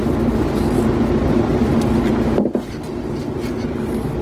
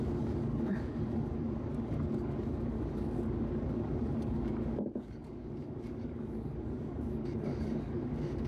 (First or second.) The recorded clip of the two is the first